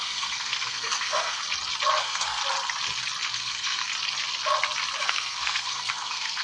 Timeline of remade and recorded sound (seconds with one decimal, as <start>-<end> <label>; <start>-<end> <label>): 0.0-1.4 remade; 1.4-2.0 recorded; 2.0-2.4 remade; 2.4-3.3 recorded; 3.3-3.9 remade; 3.9-5.0 recorded; 5.0-6.4 remade